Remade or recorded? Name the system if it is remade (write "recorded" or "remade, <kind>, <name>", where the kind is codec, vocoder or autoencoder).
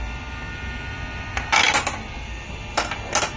recorded